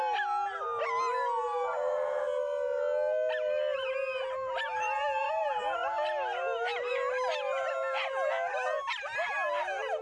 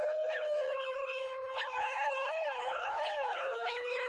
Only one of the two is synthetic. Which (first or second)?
second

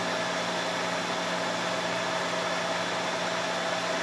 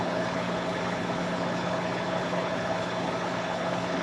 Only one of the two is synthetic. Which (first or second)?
second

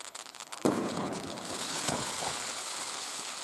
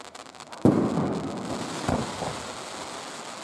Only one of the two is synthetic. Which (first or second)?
first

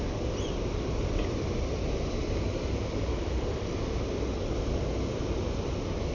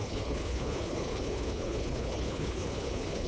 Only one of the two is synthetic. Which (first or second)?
second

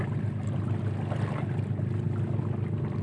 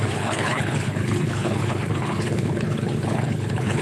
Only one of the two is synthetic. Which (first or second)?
second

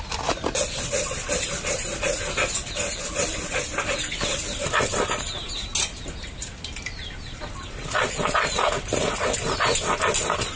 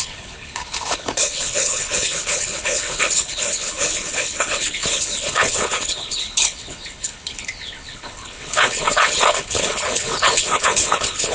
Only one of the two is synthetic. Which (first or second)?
second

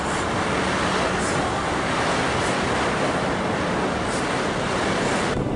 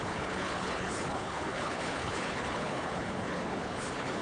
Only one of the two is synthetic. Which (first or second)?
second